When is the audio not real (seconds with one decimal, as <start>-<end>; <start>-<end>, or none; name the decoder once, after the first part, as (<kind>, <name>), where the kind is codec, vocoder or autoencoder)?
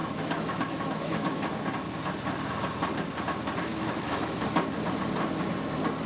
0.0-1.5 (autoencoder, DAC-VAE); 3.7-4.4